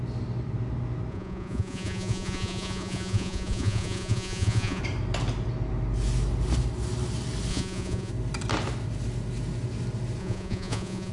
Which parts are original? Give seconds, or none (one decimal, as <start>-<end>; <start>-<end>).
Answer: 0.0-1.1; 4.8-7.5; 8.1-10.2